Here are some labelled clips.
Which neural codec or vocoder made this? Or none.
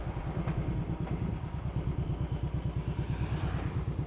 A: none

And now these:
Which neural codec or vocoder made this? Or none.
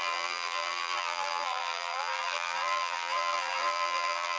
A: vocoder, BigVGAN v2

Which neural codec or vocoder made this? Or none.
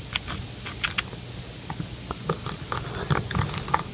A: none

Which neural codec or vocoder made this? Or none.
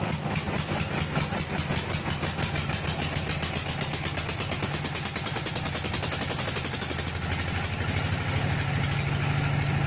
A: none